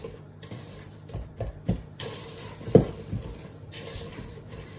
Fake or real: fake